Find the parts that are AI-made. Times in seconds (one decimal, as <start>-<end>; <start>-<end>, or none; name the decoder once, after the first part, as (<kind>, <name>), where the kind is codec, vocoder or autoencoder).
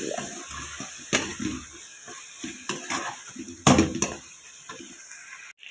none